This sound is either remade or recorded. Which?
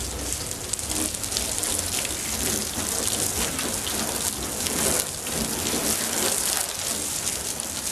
recorded